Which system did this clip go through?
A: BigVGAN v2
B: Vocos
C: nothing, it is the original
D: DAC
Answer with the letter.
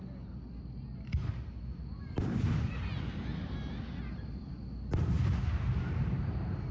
C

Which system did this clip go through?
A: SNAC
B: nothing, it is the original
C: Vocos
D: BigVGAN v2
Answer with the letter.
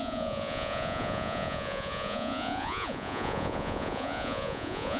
C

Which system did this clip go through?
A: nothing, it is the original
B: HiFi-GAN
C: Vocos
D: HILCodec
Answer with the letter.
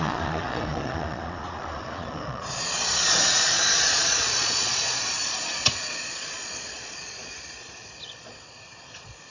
C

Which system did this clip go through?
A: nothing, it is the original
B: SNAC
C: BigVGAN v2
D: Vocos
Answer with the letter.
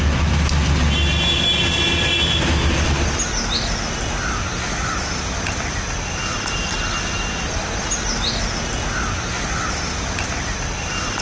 A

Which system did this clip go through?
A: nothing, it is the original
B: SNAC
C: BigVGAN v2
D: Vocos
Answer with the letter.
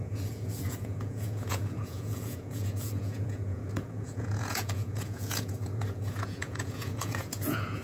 D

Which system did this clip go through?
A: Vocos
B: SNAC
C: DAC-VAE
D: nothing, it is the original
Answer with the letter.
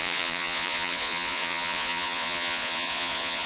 A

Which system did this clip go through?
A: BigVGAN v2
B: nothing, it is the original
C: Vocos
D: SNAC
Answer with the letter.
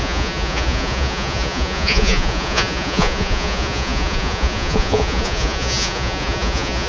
C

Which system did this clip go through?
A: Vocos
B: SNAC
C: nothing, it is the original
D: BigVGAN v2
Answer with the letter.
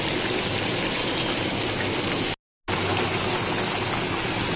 C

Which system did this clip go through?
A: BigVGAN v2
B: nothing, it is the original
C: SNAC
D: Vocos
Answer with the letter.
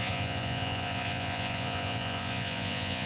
D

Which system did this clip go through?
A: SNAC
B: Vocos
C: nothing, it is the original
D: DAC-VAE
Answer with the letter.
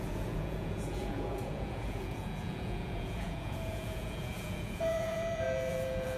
B